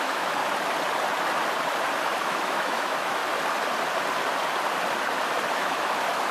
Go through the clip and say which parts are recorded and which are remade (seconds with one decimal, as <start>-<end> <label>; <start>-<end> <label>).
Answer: 0.0-0.4 remade; 0.4-2.2 recorded; 2.2-3.2 remade; 3.2-5.5 recorded; 5.5-6.3 remade